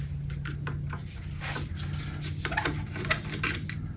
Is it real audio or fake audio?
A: real